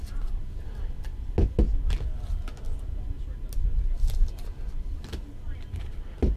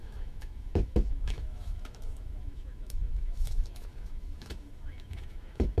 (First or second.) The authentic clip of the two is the first